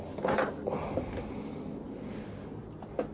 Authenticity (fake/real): real